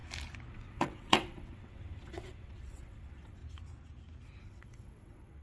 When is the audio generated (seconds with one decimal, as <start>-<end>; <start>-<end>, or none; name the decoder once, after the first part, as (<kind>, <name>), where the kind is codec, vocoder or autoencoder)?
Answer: 0.5-3.4 (vocoder, WaveNeXt); 4.4-5.4